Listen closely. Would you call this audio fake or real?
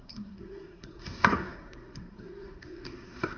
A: fake